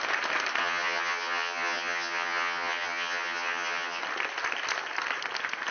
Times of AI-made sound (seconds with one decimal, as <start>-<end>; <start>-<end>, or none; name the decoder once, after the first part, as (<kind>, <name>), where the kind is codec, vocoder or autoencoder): 0.6-4.0 (vocoder, HiFi-GAN)